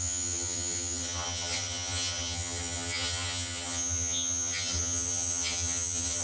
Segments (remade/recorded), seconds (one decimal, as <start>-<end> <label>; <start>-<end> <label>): 0.0-6.2 remade